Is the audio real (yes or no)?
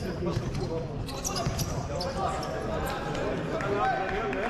yes